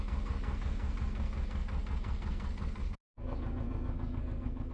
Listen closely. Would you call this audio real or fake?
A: fake